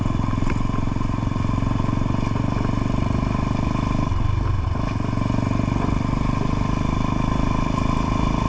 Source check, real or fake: real